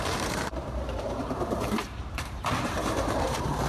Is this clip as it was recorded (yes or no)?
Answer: no